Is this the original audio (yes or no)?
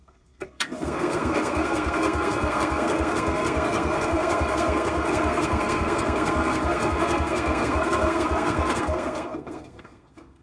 no